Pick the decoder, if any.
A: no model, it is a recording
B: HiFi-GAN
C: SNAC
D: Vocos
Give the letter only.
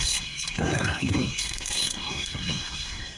C